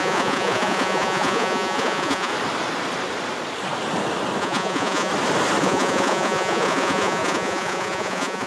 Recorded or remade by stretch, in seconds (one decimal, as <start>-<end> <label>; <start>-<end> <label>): 0.0-2.3 remade; 2.3-4.4 recorded; 4.4-5.1 remade; 5.1-5.6 recorded; 5.6-8.5 remade

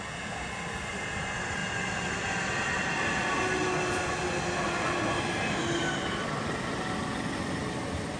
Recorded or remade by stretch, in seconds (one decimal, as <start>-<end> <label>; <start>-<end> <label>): 0.0-8.2 recorded

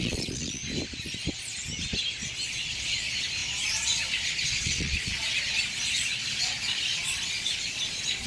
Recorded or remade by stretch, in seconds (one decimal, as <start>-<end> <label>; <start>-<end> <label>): 0.0-0.6 remade; 0.6-2.5 recorded; 2.5-8.3 remade

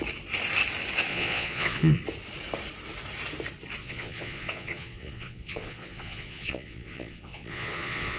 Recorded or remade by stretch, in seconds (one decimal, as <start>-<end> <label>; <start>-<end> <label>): 0.0-1.1 recorded; 1.1-2.0 remade; 2.0-3.8 recorded; 3.8-8.2 remade

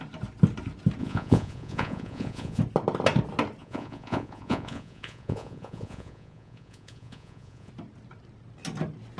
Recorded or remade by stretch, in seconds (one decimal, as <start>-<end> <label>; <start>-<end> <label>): 0.0-1.0 recorded; 1.0-2.6 remade; 2.6-3.6 recorded; 3.6-7.7 remade; 7.7-9.2 recorded

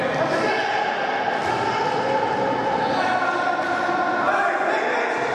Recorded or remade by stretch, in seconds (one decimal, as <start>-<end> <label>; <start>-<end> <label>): 0.0-5.3 recorded

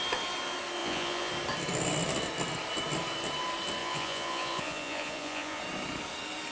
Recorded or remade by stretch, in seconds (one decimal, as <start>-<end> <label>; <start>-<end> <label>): 0.0-0.8 recorded; 0.8-1.3 remade; 1.3-3.8 recorded; 3.8-5.6 remade; 5.6-6.5 recorded